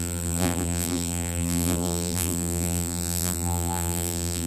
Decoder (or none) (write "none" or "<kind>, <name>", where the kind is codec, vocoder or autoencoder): vocoder, BigVGAN v2